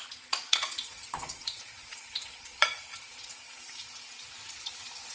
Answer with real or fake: fake